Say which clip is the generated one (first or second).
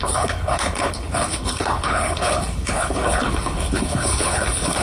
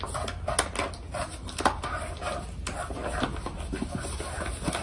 first